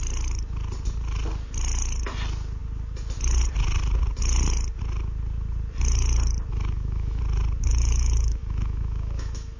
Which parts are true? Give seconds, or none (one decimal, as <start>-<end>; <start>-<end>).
0.0-6.5; 7.2-7.7

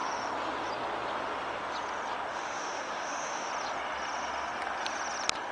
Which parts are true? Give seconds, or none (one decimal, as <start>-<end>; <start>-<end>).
0.0-2.3; 3.5-5.5

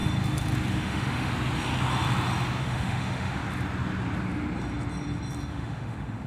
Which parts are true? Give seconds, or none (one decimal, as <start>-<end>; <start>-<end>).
0.0-0.7; 1.3-2.6; 3.4-5.5

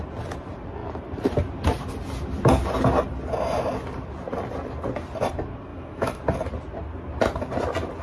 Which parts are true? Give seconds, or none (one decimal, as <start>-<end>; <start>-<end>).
0.0-5.7; 6.2-8.0

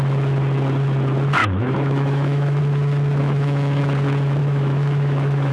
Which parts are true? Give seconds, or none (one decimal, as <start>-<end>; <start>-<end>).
0.0-1.4; 2.6-3.2; 3.8-4.4

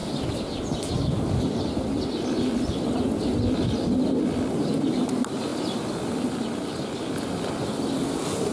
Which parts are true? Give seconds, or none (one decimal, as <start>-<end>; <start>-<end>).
0.0-8.5

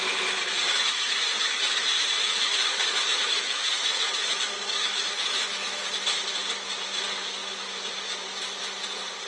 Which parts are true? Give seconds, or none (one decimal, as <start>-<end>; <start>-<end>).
0.0-0.7; 5.9-9.3

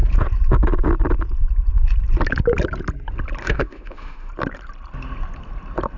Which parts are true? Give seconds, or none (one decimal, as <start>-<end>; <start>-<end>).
0.0-3.4; 4.3-6.0